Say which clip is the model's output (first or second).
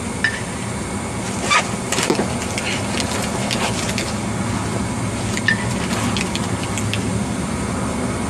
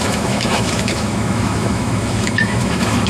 second